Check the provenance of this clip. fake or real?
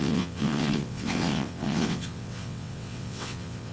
fake